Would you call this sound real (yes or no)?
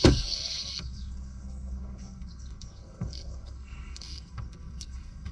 no